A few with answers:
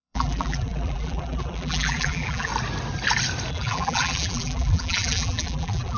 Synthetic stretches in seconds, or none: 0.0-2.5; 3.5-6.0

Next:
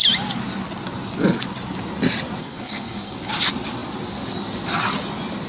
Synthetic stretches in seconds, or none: 2.4-3.3